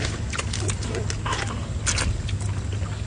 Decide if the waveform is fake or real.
real